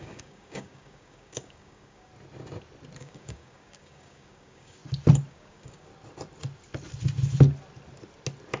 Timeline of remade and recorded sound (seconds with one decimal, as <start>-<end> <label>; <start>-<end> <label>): 0.0-2.1 remade; 2.1-3.0 recorded; 3.0-4.8 remade; 4.8-5.3 recorded; 5.3-5.9 remade; 5.9-8.6 recorded